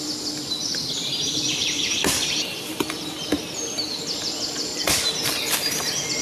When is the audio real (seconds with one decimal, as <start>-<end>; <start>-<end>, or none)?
0.0-1.6; 3.1-4.7; 5.5-6.2